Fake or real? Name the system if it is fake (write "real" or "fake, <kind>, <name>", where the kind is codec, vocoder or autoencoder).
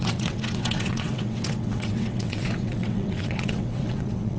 fake, vocoder, WaveNeXt